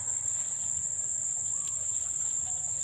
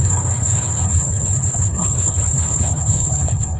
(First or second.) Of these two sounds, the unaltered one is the first